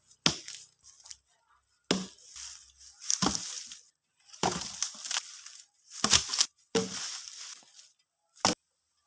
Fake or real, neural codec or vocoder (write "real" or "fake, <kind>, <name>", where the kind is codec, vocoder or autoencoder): real